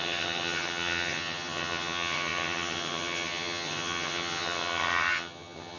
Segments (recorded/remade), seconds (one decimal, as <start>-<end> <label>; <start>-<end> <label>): 0.0-5.8 remade